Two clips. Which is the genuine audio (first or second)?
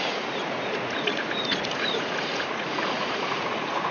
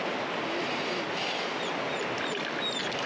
second